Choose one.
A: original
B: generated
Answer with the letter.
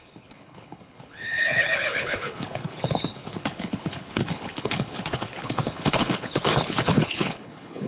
B